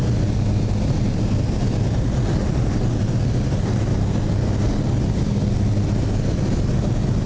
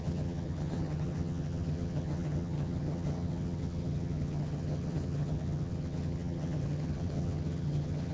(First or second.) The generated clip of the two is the second